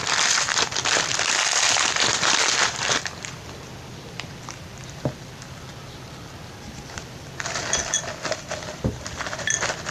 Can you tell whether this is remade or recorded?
remade